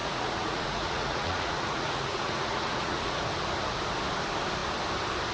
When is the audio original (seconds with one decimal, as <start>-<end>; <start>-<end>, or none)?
3.2-5.3